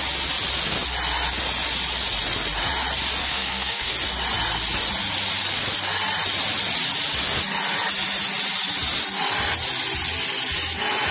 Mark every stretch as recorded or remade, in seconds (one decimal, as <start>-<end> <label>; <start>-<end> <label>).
0.0-3.2 recorded; 3.2-3.9 remade; 3.9-11.1 recorded